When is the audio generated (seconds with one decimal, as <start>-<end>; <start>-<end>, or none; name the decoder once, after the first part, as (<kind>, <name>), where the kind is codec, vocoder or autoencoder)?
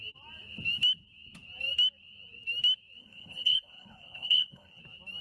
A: 3.0-4.8 (codec, HILCodec)